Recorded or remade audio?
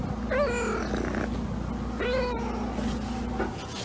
recorded